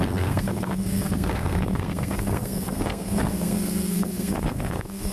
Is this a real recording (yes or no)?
no